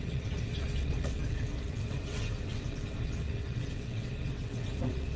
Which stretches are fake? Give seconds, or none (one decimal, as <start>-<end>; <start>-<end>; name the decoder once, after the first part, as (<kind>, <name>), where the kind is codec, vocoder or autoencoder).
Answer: 0.0-5.2 (vocoder, WaveNeXt)